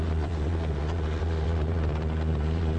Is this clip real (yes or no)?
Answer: no